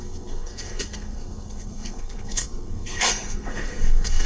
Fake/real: fake